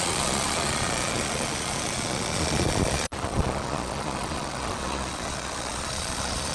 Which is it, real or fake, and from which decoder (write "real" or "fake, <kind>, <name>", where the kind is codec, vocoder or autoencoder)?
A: fake, vocoder, Vocos